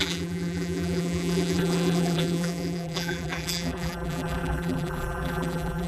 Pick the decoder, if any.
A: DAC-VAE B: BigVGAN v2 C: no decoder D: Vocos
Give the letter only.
B